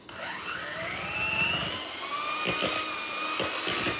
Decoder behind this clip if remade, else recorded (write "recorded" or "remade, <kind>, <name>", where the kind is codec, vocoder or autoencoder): recorded